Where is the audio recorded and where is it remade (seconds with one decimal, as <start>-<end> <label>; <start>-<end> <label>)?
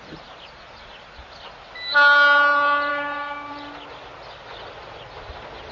0.0-2.9 recorded; 2.9-3.5 remade; 3.5-5.7 recorded